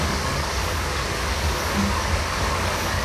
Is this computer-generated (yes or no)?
yes